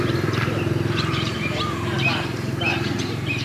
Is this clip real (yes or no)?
no